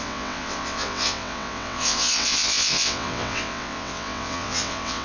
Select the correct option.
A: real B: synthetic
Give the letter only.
B